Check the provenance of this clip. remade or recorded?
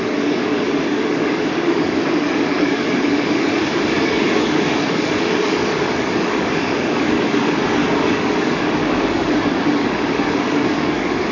remade